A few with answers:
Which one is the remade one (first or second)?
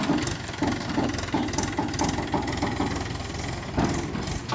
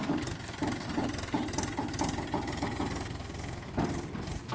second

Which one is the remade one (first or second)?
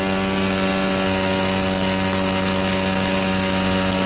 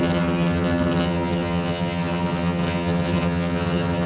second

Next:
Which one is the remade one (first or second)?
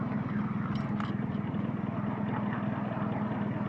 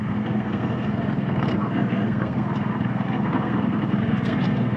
second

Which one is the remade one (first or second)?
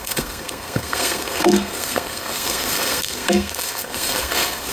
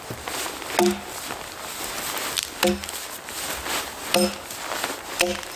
first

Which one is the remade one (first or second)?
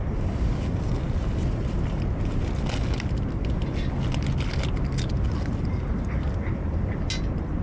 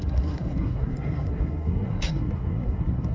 second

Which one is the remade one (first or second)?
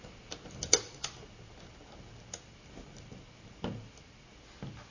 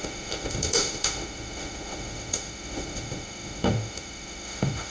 second